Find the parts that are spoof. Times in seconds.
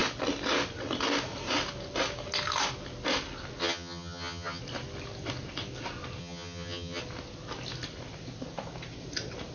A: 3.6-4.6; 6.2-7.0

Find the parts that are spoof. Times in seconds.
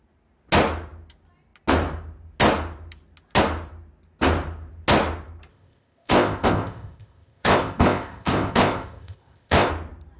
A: 5.5-9.7